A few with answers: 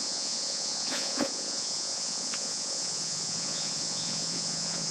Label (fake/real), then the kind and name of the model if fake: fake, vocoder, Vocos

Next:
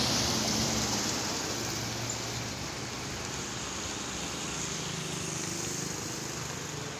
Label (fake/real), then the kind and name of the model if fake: real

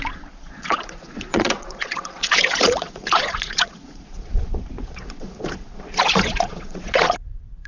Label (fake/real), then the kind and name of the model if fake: fake, vocoder, Vocos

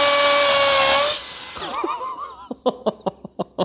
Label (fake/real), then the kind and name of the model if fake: real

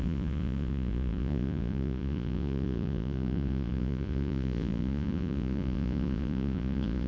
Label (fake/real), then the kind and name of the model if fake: fake, vocoder, Vocos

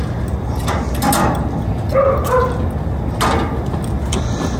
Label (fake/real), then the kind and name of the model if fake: real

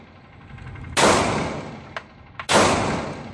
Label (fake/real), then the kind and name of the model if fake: real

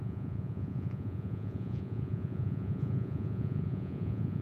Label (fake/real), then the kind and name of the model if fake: fake, vocoder, Vocos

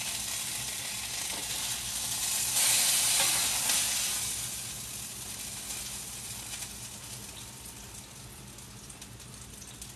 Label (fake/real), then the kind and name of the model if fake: real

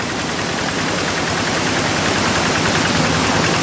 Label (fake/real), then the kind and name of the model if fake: real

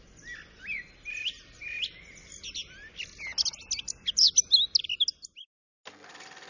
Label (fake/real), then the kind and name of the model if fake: real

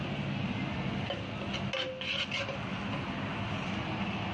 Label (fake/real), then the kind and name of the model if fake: real